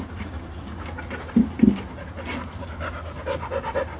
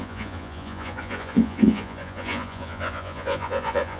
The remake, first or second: second